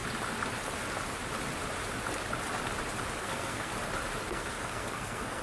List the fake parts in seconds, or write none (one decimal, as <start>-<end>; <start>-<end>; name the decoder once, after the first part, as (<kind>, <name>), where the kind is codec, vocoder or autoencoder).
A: 3.2-3.7 (codec, SNAC); 4.3-5.4